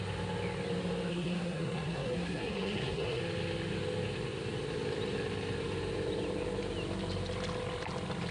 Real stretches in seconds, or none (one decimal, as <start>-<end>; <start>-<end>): 0.0-1.1; 3.2-8.3